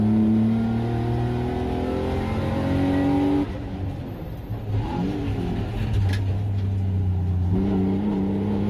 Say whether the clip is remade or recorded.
recorded